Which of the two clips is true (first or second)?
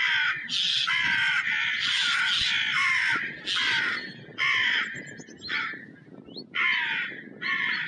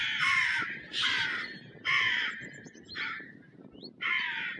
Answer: first